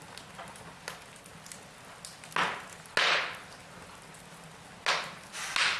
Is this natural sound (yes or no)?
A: yes